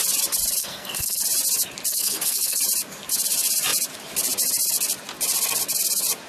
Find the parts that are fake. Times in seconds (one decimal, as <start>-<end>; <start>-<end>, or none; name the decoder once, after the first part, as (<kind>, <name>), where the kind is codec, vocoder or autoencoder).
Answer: 0.6-1.2 (codec, SNAC); 1.9-2.6